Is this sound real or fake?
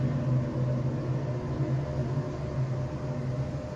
real